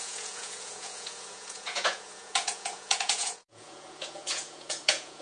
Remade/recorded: remade